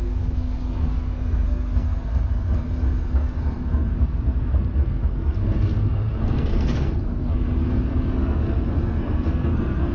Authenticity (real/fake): fake